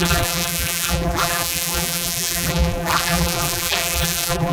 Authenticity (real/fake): fake